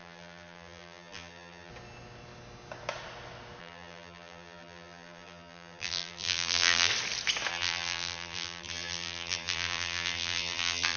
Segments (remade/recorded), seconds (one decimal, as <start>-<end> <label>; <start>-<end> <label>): 0.0-1.7 remade; 1.7-3.6 recorded; 3.6-6.9 remade; 6.9-7.5 recorded; 7.5-11.0 remade